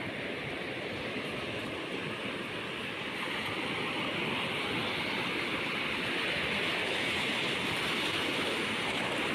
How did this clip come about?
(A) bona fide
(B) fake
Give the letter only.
A